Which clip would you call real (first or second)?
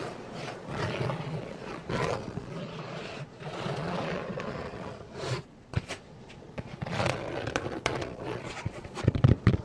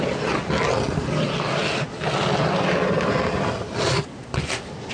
second